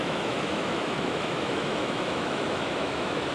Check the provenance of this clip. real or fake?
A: fake